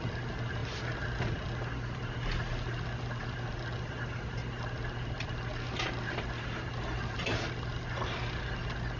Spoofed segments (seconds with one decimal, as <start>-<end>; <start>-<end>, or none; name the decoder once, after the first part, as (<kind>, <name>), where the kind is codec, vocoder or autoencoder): none